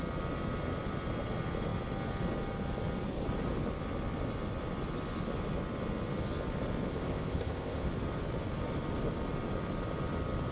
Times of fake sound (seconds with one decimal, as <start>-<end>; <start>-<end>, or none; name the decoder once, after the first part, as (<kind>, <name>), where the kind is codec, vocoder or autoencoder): 6.9-7.9 (codec, ZipCodec)